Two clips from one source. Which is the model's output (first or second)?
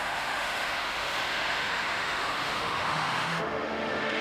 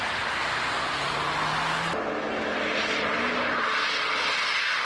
first